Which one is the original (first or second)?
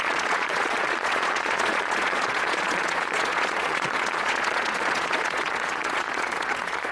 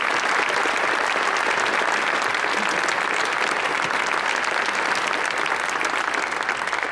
second